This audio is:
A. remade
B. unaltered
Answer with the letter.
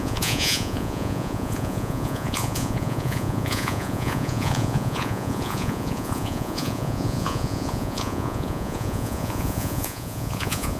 A